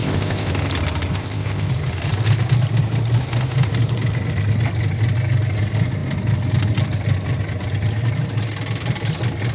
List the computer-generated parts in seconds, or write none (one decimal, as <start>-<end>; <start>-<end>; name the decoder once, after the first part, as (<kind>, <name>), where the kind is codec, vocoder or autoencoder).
0.0-0.5 (codec, ZipCodec); 1.1-1.7